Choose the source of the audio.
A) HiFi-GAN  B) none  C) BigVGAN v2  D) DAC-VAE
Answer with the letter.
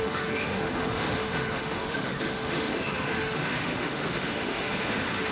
D